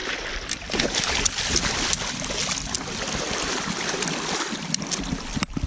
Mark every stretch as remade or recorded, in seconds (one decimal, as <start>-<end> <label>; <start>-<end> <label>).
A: 0.0-5.7 recorded